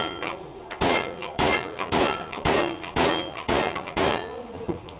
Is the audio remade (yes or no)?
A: yes